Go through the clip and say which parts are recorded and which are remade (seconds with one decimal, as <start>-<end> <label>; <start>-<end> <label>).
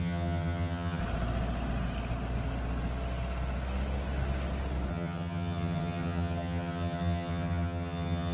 0.0-1.0 remade; 1.0-4.9 recorded; 4.9-8.3 remade